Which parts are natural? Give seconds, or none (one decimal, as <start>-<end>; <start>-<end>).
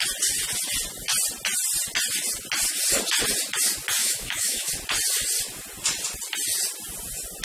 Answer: 0.0-4.0; 4.7-7.4